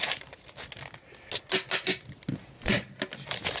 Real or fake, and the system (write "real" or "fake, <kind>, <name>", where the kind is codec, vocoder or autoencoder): real